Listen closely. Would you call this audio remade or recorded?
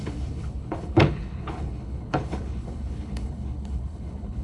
remade